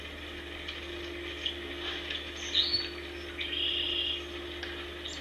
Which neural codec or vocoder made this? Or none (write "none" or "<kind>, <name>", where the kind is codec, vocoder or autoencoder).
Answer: none